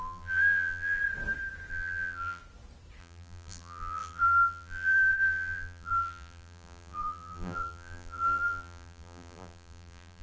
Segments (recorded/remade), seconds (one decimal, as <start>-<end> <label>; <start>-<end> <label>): 0.0-1.0 remade; 1.0-1.7 recorded; 1.7-2.4 remade; 2.4-3.0 recorded; 3.0-10.2 remade